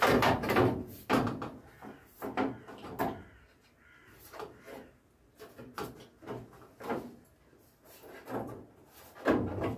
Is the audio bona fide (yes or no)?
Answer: yes